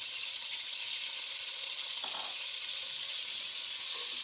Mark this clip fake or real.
fake